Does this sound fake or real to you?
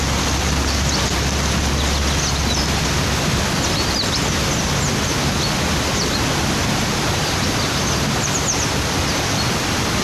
real